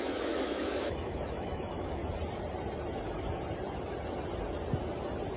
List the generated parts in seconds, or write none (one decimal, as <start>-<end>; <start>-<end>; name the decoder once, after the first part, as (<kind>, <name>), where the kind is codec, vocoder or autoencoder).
0.0-2.0 (autoencoder, DAC-VAE)

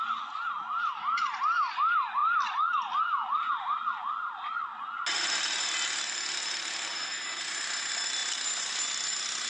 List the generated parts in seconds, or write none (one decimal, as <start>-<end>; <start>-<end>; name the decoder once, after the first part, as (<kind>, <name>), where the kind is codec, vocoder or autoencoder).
none

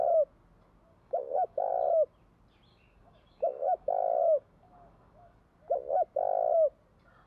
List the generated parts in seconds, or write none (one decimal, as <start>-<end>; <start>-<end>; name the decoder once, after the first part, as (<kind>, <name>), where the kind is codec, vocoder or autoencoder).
0.9-1.7 (codec, DAC); 2.7-5.4

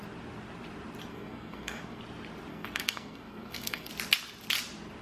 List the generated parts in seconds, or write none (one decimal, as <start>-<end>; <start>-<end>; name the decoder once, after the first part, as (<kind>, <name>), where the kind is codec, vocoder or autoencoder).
1.1-2.0 (codec, SNAC); 2.5-3.9